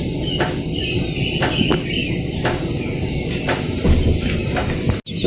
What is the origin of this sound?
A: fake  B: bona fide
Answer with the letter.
B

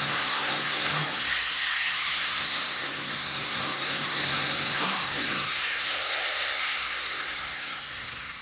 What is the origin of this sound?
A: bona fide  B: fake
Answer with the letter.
B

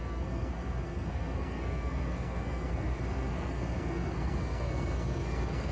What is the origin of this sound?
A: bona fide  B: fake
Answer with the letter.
B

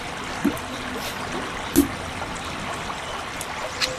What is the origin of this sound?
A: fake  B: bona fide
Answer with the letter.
B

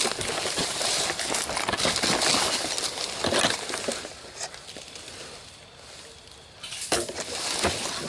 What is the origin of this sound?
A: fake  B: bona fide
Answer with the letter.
B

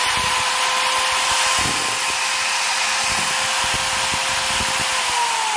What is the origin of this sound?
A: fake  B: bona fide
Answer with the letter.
B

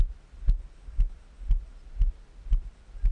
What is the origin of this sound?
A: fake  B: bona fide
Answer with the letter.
B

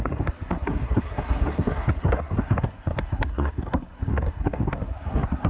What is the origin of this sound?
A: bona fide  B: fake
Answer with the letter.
B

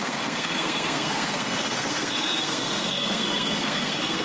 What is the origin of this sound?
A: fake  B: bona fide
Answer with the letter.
A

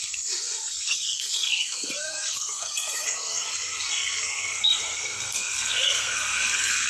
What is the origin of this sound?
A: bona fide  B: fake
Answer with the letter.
B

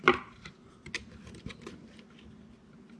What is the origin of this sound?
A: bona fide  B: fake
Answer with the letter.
A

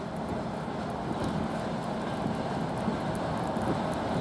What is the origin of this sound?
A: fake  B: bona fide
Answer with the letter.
B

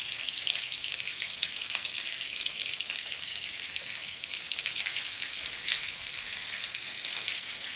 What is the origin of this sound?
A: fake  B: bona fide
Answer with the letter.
A